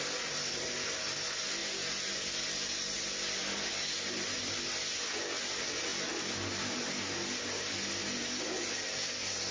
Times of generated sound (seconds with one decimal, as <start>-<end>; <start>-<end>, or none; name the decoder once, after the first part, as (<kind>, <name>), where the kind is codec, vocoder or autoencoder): none